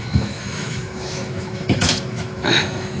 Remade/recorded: remade